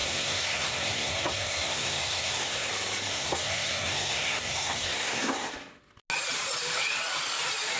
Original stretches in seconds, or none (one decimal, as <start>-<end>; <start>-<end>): 2.7-3.1; 5.5-7.8

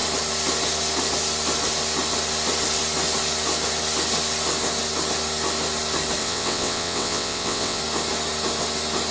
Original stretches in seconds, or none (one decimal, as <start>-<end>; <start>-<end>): 0.0-6.2; 7.8-9.1

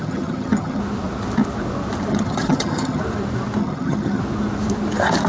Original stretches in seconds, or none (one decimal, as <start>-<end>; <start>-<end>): 0.8-2.1; 3.0-3.6; 4.2-5.3

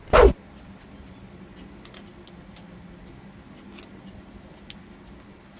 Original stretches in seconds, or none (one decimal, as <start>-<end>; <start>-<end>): 0.0-5.6